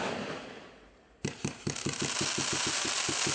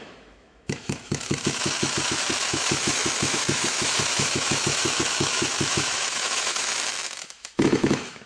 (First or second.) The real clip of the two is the first